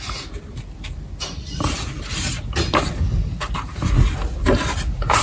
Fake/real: real